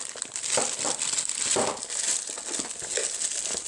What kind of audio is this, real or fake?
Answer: real